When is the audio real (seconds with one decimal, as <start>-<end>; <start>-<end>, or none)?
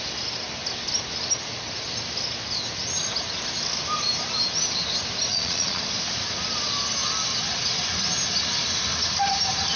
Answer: 0.0-5.3; 5.8-9.8